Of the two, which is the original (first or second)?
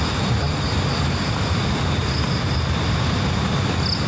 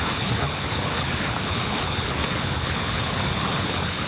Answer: first